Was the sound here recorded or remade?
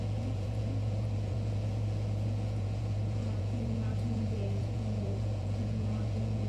remade